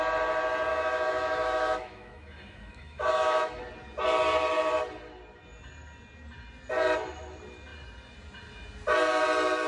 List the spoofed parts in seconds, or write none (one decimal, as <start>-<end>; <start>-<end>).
0.7-3.6